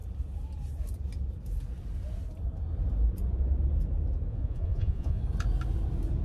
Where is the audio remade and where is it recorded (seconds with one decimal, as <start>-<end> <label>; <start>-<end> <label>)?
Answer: 0.0-4.3 recorded; 4.3-5.2 remade; 5.2-6.2 recorded